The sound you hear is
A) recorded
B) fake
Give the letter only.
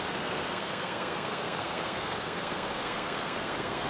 B